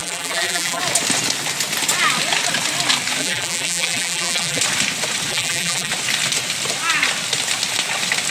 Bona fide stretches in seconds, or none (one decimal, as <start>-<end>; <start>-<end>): 0.8-3.2; 4.6-5.3; 5.9-8.3

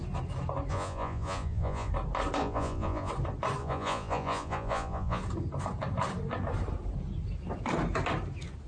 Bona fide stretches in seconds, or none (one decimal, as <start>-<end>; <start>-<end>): 0.0-0.7; 1.9-2.4; 3.1-3.6; 5.2-8.7